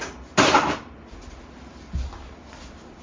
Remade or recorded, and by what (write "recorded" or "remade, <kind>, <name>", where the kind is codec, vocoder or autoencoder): recorded